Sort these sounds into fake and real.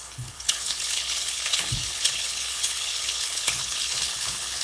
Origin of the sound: fake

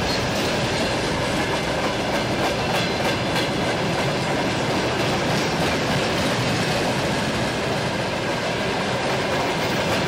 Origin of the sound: real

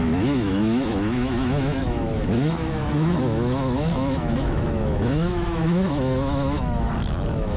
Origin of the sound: fake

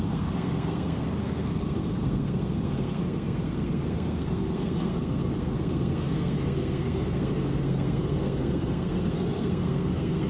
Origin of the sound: fake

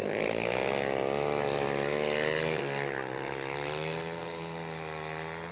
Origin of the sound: real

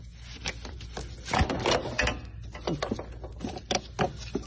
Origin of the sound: real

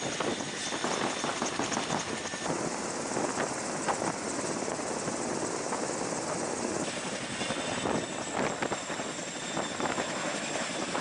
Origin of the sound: real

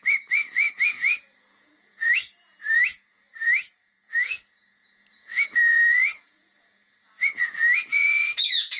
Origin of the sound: fake